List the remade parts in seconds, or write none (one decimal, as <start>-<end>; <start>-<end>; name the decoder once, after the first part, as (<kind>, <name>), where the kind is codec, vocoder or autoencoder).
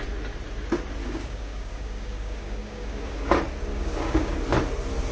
1.0-3.3 (codec, DAC); 3.7-4.4